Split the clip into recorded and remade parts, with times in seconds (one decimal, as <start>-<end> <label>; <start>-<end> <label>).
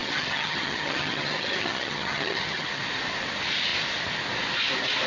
0.0-2.8 remade; 2.8-5.1 recorded